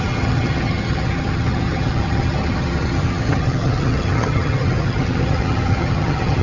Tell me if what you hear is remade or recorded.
remade